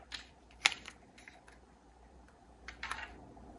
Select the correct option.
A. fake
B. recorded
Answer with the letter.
A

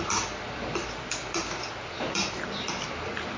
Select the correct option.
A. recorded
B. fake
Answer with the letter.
B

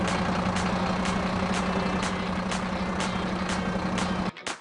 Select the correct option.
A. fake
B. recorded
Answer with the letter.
B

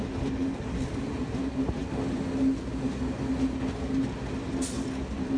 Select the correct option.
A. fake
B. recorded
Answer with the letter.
B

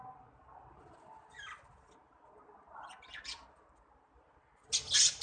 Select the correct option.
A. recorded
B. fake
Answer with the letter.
A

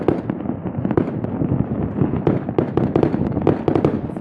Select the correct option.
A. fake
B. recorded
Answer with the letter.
B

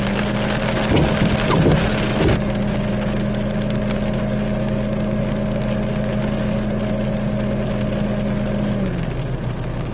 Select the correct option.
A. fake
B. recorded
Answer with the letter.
B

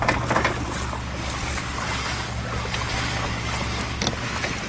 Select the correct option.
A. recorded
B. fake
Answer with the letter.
A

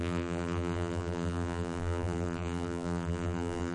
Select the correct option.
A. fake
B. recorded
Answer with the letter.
A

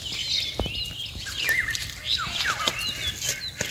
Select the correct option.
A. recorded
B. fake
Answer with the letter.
A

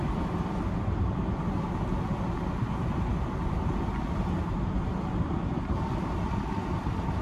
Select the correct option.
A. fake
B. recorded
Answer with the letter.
B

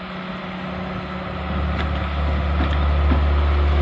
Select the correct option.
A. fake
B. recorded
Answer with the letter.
B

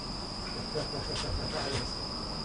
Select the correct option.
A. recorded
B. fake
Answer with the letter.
B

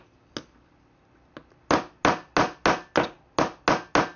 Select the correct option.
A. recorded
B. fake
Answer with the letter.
A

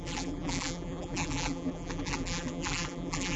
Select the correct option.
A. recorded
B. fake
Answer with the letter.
B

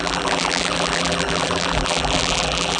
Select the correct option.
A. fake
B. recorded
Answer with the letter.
A